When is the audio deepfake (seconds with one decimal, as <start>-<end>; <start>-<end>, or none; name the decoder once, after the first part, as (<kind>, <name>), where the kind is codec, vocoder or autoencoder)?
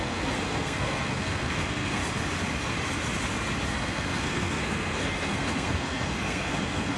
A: 0.0-2.0 (codec, SNAC); 3.7-7.0